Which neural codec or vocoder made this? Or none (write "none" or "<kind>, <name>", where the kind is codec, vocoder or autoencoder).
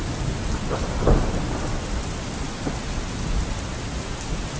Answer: none